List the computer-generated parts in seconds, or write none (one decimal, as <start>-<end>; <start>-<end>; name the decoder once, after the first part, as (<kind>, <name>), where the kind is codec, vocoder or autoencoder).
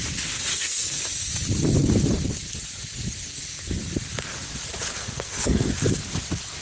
0.5-1.0 (codec, SNAC); 5.0-5.7